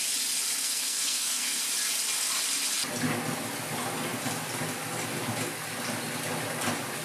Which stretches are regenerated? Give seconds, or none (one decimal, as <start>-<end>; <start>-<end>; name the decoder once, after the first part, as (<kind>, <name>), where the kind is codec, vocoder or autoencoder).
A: 0.6-1.6 (codec, SNAC)